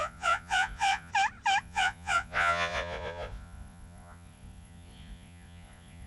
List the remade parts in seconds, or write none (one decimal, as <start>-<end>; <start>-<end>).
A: 0.0-1.1; 1.6-6.1